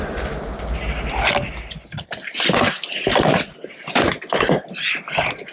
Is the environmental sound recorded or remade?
recorded